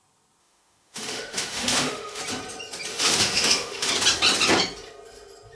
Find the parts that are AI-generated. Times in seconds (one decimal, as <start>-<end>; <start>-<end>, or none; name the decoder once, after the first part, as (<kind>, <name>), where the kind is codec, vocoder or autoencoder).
0.4-2.2 (autoencoder, DAC-VAE); 2.9-3.9